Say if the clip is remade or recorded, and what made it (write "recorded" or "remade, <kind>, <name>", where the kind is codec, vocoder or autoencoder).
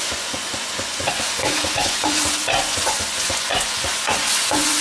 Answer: remade, vocoder, Vocos